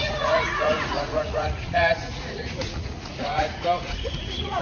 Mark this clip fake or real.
fake